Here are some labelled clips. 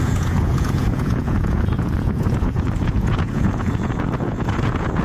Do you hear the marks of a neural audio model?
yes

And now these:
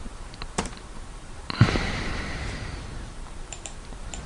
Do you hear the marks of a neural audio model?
yes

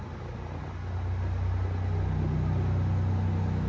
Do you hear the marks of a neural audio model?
no